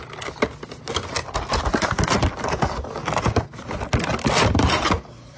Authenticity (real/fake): real